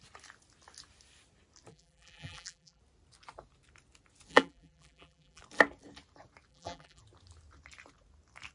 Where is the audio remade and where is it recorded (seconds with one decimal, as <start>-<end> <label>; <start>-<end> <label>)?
0.0-1.7 recorded; 1.7-2.8 remade; 2.8-4.3 recorded; 4.3-5.4 remade; 5.4-6.5 recorded; 6.5-7.0 remade; 7.0-8.5 recorded